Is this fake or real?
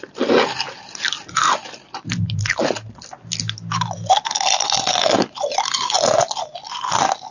real